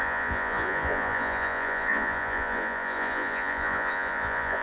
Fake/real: fake